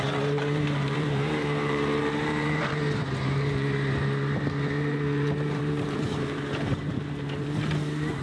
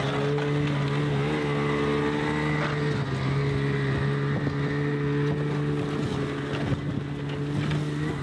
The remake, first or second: first